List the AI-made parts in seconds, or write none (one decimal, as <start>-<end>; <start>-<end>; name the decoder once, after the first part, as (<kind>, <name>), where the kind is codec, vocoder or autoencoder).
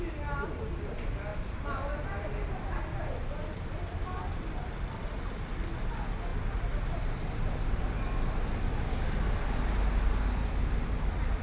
none